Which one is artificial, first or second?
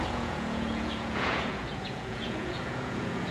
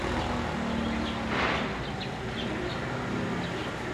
first